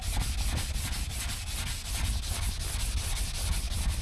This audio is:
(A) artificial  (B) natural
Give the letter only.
B